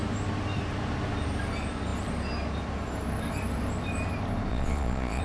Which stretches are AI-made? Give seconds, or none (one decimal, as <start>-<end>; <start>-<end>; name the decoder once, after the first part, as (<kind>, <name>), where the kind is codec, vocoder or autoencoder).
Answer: 4.5-5.2 (vocoder, Vocos)